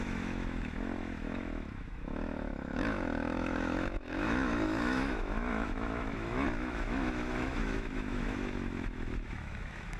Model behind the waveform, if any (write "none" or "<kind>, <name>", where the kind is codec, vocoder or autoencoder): autoencoder, DAC-VAE